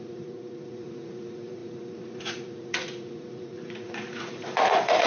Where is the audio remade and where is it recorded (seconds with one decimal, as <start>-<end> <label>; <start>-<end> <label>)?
0.0-5.1 remade